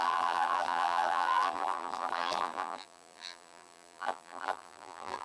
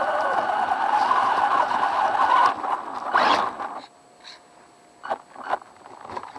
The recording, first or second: second